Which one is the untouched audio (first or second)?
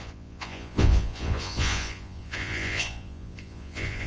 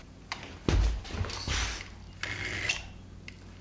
second